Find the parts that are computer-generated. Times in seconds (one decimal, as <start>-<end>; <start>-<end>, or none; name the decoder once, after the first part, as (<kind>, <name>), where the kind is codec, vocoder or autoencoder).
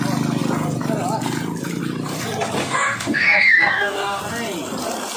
2.6-4.2 (codec, DAC)